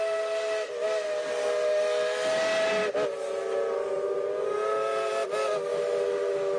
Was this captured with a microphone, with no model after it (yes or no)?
yes